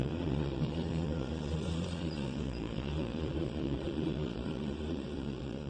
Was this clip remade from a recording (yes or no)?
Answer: yes